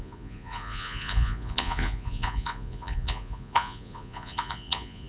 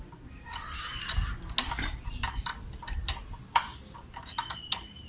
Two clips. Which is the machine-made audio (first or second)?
first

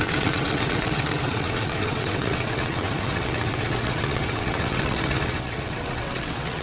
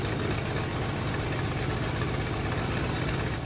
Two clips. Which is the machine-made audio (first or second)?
first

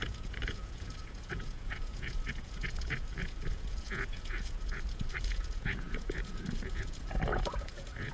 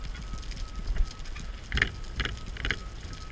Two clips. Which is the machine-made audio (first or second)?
first